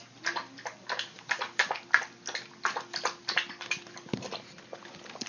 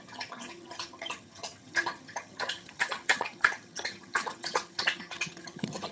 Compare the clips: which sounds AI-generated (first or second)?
second